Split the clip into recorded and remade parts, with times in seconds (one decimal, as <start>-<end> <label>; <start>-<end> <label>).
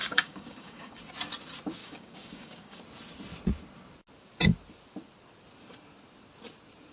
0.0-1.0 remade; 1.0-1.8 recorded; 1.8-2.8 remade; 2.8-6.9 recorded